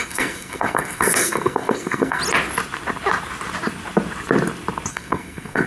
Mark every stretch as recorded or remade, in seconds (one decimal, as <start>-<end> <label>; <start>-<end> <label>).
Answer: 0.0-2.2 remade; 2.2-4.9 recorded; 4.9-5.7 remade